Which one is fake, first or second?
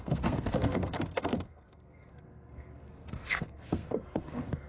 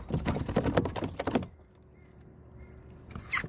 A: first